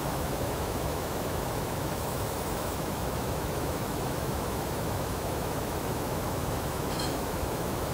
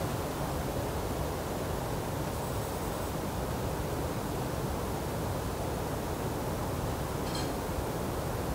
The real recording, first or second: second